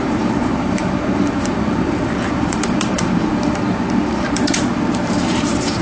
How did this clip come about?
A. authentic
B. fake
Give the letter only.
B